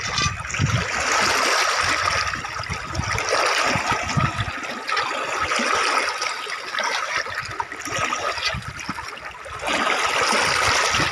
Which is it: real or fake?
real